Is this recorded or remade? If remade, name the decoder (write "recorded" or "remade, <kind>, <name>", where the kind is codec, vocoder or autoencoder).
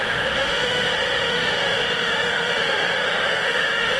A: remade, autoencoder, DAC-VAE